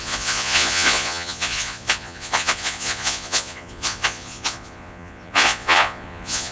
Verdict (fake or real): fake